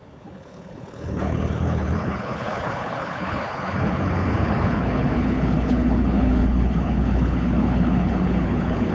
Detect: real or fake fake